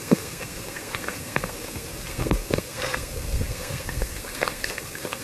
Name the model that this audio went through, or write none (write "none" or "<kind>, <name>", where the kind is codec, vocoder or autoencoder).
codec, SNAC